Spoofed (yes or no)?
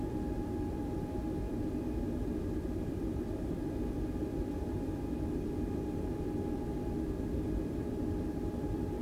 yes